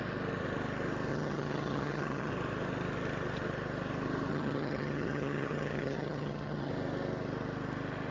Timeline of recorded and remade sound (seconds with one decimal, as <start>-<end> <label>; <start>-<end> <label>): 0.0-1.1 recorded; 1.1-2.3 remade; 2.3-4.3 recorded; 4.3-6.7 remade; 6.7-8.1 recorded